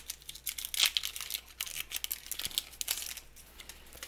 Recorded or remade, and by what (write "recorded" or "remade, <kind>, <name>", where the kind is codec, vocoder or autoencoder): recorded